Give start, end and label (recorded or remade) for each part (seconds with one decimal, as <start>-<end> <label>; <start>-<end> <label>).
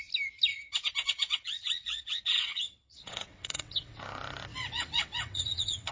0.0-0.5 recorded; 0.5-4.0 remade; 4.0-4.5 recorded; 4.5-5.9 remade